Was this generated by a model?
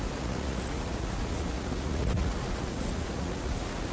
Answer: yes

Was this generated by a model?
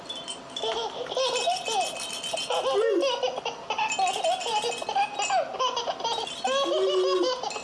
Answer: no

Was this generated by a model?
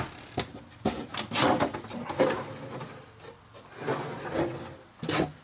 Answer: no